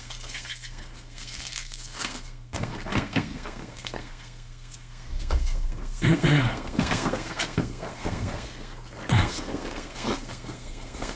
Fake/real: fake